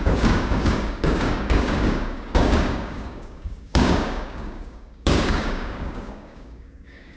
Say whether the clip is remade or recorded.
remade